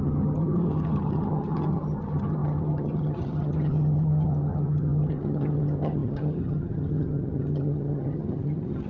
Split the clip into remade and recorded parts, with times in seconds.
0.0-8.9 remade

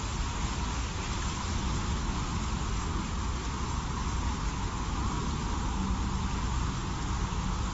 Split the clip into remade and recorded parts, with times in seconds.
0.0-7.7 recorded

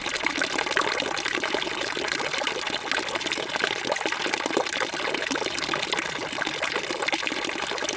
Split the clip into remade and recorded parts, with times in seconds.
0.0-8.0 recorded